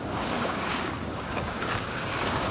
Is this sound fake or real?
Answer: fake